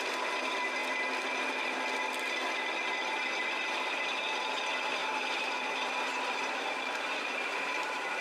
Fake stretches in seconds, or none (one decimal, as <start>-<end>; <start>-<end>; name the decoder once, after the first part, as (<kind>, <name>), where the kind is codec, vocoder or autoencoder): 5.0-8.2 (vocoder, BigVGAN v2)